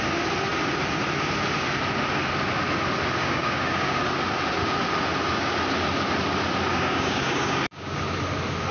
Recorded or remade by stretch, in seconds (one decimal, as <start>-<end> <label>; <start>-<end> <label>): 0.0-3.2 recorded; 3.2-4.0 remade; 4.0-6.7 recorded; 6.7-8.0 remade; 8.0-8.7 recorded